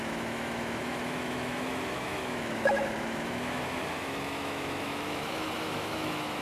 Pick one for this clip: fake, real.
fake